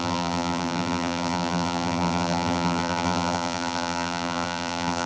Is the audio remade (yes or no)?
yes